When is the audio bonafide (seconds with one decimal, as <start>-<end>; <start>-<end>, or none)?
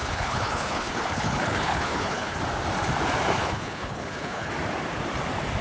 2.4-3.4; 4.5-5.6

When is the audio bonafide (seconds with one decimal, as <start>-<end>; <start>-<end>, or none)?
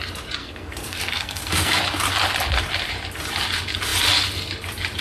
0.0-0.4; 1.8-5.0